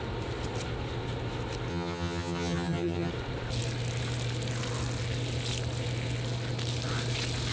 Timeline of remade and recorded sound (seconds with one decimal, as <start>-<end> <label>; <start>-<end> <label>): 0.0-1.7 recorded; 1.7-3.1 remade; 3.1-7.5 recorded